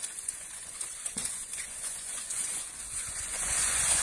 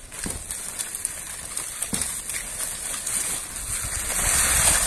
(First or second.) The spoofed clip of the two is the first